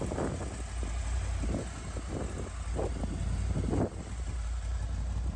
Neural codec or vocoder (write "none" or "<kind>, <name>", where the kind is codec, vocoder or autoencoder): none